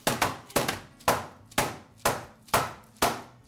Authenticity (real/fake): real